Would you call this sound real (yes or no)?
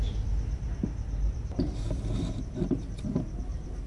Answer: yes